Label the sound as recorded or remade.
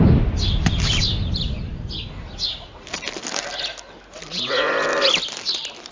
recorded